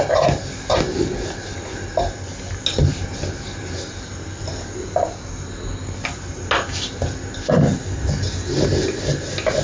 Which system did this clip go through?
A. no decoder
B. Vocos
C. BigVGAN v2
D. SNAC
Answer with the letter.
A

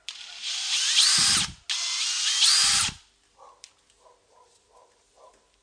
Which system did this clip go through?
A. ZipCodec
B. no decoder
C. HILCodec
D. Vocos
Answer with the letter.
B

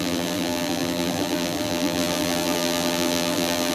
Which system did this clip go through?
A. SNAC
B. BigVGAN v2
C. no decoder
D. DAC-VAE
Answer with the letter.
B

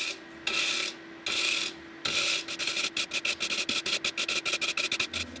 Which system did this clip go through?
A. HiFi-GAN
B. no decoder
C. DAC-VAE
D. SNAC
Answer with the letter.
B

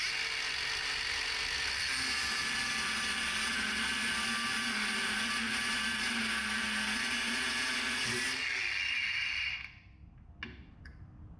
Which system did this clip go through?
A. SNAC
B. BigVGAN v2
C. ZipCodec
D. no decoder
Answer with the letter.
D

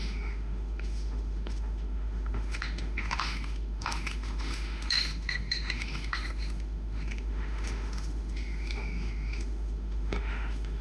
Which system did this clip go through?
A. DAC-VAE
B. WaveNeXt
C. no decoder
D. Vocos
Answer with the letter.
A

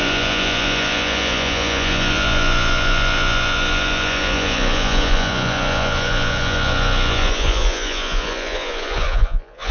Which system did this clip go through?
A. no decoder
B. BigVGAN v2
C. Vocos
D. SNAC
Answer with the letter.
C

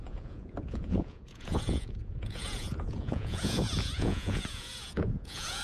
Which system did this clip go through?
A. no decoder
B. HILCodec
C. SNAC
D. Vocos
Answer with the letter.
D